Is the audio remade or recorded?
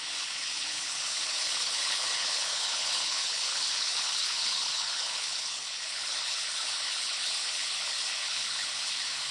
remade